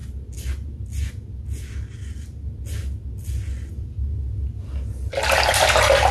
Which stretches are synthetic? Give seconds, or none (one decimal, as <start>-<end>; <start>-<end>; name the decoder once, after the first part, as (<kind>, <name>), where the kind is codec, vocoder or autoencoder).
none